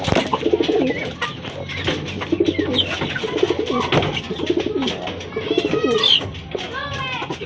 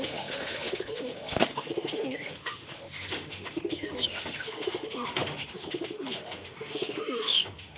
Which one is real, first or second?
first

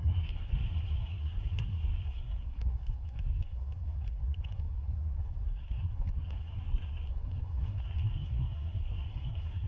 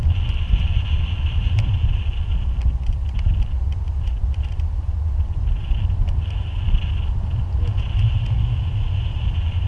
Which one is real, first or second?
second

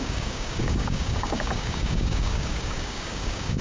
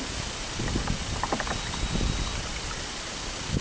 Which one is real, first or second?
second